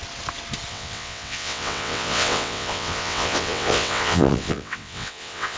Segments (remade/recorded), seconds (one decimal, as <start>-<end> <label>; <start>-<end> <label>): 0.0-0.7 recorded; 0.7-5.6 remade